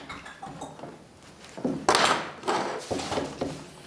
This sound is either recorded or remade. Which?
recorded